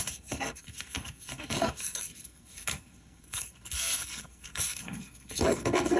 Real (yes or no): no